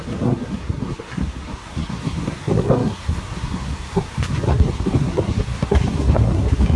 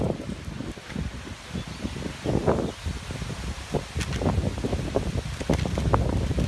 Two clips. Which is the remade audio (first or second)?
first